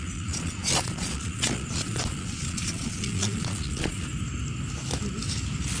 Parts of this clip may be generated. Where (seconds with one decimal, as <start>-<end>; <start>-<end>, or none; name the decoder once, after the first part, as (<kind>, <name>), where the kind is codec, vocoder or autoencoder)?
0.0-4.1 (vocoder, Vocos)